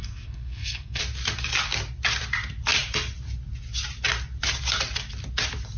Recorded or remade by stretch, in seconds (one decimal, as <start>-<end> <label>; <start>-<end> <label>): 0.0-1.0 remade; 1.0-5.8 recorded